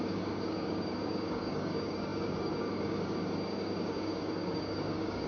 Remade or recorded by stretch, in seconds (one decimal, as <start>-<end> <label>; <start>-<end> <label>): 0.0-5.3 remade